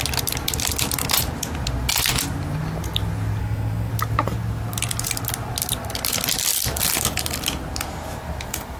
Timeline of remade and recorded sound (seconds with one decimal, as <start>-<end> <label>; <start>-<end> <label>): 0.0-3.4 recorded; 3.4-3.9 remade; 3.9-8.8 recorded